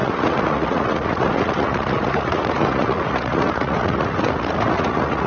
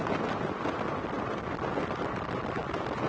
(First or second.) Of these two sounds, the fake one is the first